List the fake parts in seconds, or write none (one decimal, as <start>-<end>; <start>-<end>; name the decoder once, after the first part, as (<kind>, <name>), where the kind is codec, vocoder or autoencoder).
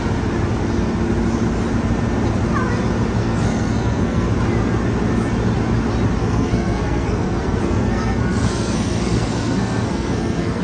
3.2-4.3 (codec, SNAC); 6.2-10.6